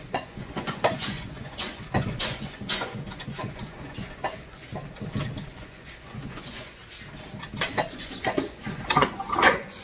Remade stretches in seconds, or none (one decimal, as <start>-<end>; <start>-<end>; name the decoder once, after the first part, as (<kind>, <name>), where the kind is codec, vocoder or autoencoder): 0.0-4.7 (vocoder, Vocos); 5.5-6.8; 7.9-9.8